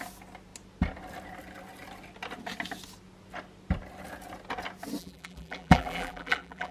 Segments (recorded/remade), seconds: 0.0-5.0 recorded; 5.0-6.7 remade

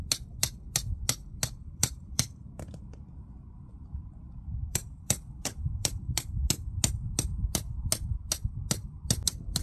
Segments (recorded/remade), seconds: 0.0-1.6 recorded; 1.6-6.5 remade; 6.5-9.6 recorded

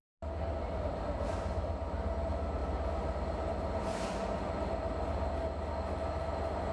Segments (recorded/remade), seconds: 0.0-6.7 recorded

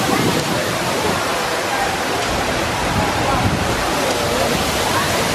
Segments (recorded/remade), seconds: 0.0-1.3 remade; 1.3-4.5 recorded; 4.5-5.3 remade